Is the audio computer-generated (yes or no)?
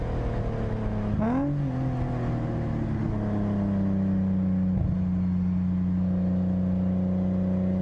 no